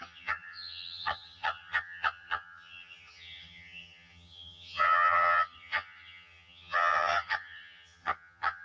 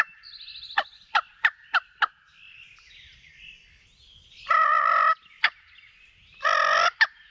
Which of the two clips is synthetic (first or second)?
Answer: first